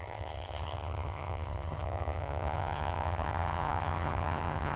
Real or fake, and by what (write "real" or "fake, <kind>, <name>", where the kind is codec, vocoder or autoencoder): fake, vocoder, HiFi-GAN